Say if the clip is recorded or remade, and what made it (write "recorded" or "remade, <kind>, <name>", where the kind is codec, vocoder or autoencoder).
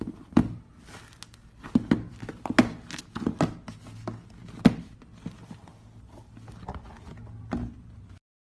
recorded